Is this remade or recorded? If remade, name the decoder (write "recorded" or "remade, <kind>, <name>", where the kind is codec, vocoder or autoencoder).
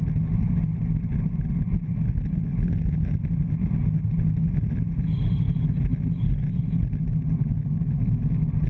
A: recorded